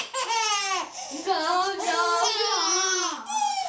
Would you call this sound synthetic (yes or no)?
no